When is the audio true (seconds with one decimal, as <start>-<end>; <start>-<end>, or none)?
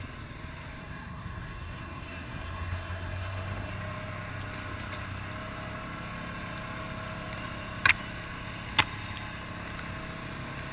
0.0-0.8; 3.7-10.7